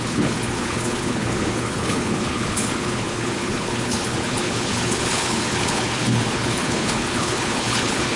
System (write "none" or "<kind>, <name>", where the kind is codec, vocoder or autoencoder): codec, HILCodec